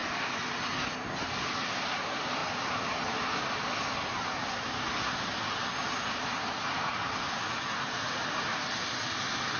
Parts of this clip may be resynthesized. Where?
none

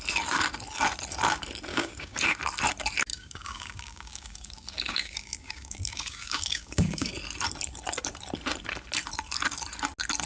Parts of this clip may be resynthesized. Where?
1.7-2.2 (codec, DAC); 3.1-7.1

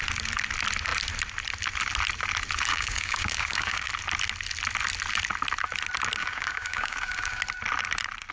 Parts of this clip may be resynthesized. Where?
2.7-3.9 (codec, DAC); 6.2-7.4